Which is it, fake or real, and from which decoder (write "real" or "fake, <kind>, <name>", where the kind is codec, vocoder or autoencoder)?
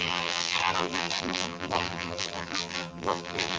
fake, vocoder, BigVGAN v2